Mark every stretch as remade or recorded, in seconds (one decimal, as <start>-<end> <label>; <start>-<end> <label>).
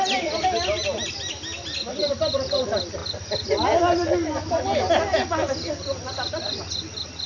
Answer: 0.0-7.3 recorded